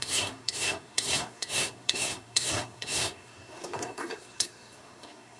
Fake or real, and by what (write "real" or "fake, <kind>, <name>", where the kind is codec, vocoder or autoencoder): fake, codec, SNAC